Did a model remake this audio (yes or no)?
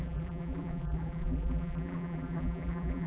yes